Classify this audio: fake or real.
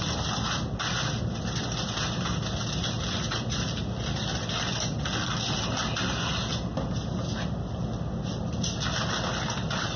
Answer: real